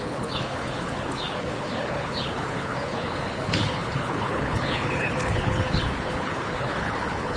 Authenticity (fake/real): fake